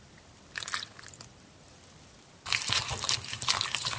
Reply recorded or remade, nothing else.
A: remade